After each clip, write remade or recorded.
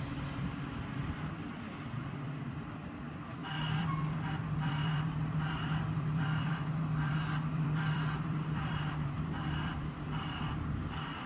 remade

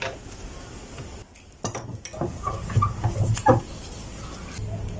recorded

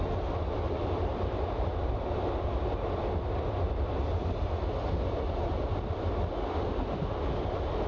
recorded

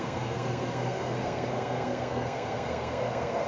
remade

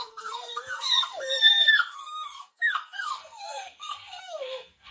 remade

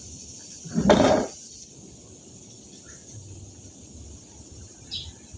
recorded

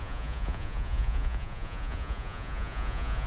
remade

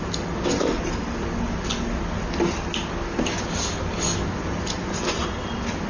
recorded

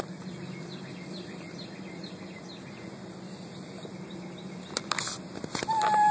recorded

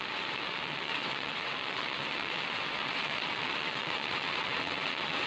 remade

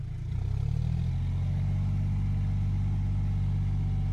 recorded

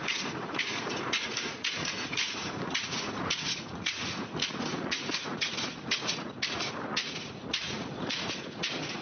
remade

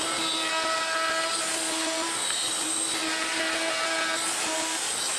recorded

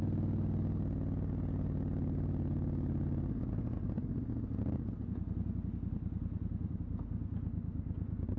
recorded